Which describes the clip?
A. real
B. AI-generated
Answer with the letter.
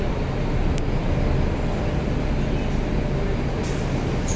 A